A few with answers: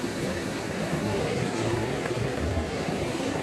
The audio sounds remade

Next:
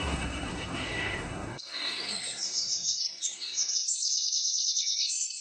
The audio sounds remade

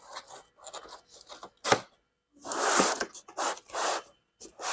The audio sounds recorded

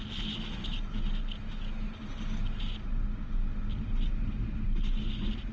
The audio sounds recorded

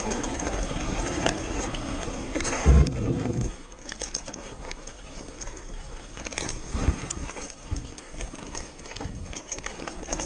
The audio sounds remade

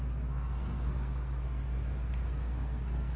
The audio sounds remade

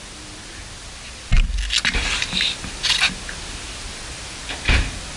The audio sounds recorded